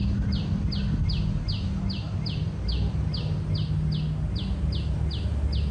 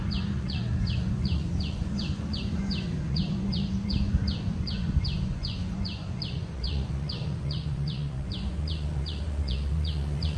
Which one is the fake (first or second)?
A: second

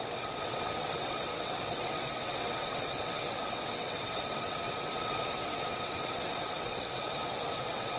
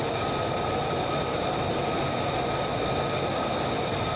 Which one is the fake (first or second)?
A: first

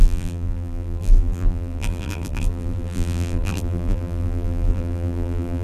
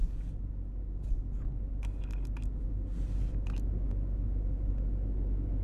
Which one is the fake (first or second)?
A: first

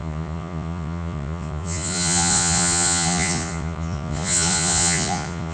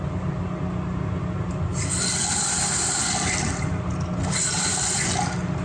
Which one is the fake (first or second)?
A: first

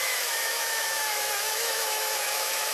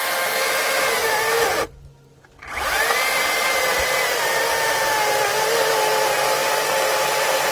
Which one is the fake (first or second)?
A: first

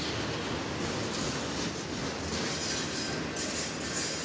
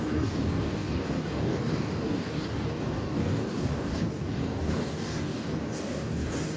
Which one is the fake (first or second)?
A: second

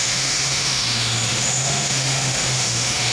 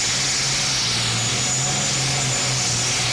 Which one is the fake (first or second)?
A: first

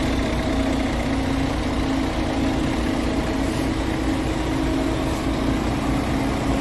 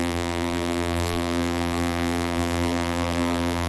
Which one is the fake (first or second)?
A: second